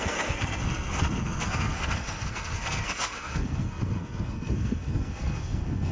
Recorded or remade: remade